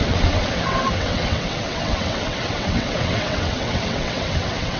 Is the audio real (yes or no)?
no